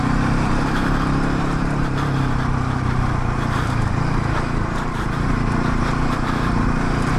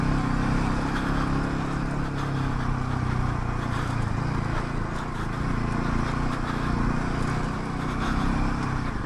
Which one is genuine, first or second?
second